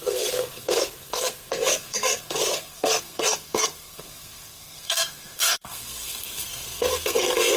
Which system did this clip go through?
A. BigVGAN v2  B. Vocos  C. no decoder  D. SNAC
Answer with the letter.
D